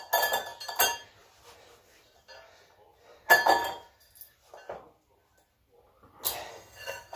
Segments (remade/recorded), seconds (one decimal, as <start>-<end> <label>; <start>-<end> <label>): 0.0-6.5 recorded; 6.5-7.2 remade